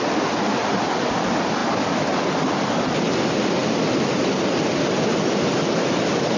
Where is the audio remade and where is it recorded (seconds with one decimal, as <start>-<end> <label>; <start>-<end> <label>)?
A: 0.0-6.4 recorded